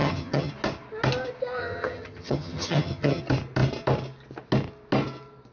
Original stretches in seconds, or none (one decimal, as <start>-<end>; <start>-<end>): 0.5-1.6; 3.2-5.5